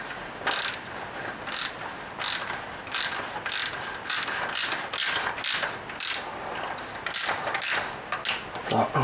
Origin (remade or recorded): recorded